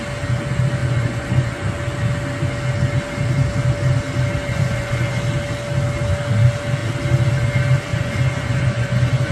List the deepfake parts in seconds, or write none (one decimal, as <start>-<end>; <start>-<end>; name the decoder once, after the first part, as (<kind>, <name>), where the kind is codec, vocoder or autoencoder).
0.8-1.7 (vocoder, Vocos); 4.5-5.2; 7.9-9.3